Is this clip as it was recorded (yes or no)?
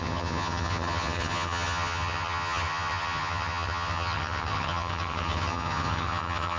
no